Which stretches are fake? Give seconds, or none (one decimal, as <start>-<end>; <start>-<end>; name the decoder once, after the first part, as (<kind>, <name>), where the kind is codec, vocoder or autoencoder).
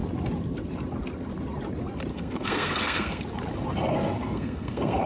2.1-3.2 (codec, SNAC); 3.9-5.1